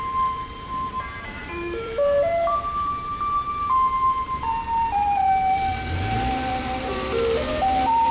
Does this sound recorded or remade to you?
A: remade